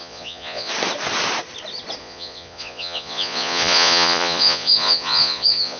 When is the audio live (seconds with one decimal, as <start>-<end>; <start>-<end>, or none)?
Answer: 0.7-2.0